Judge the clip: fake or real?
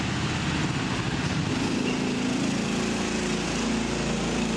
real